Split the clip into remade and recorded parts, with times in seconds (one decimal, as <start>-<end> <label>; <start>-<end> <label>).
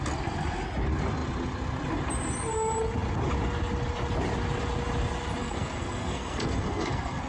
0.0-5.4 recorded; 5.4-7.3 remade